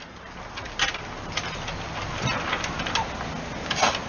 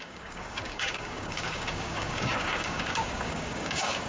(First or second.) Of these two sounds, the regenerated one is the second